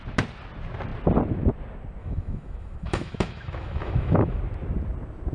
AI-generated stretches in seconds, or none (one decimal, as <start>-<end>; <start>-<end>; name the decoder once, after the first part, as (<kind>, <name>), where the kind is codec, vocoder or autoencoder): 2.0-4.4 (autoencoder, DAC-VAE)